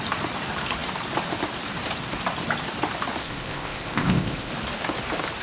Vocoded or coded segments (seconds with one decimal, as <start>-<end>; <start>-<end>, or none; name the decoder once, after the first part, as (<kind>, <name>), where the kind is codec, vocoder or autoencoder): 3.2-4.5 (codec, ZipCodec)